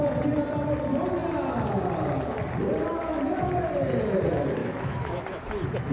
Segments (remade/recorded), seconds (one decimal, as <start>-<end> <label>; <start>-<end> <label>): 0.0-4.6 recorded; 4.6-5.2 remade; 5.2-5.9 recorded